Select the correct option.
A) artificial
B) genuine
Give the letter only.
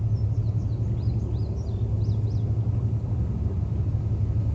B